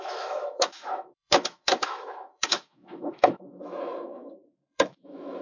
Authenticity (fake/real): fake